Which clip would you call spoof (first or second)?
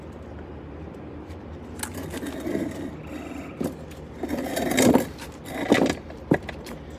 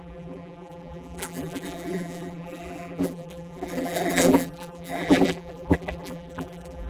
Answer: second